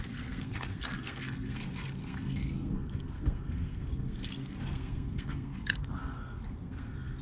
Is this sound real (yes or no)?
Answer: no